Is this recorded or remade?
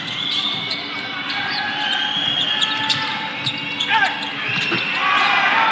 recorded